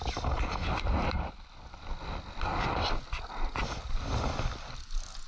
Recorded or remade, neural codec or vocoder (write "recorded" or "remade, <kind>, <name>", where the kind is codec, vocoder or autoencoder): recorded